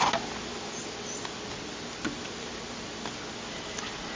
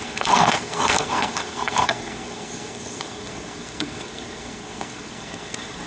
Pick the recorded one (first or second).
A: first